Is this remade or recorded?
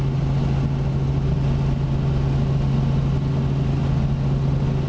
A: recorded